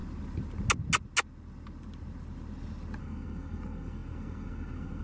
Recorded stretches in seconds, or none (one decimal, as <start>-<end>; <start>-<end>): 0.0-3.0